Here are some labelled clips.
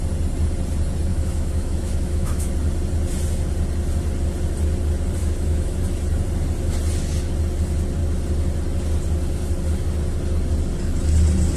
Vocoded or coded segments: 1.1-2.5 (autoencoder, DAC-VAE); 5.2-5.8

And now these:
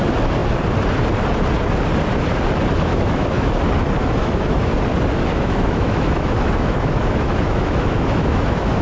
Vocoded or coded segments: 2.9-3.5 (autoencoder, DAC-VAE); 4.0-4.7; 5.3-8.8